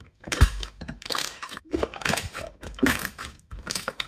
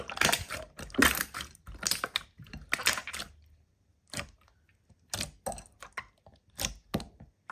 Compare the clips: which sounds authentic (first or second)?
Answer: second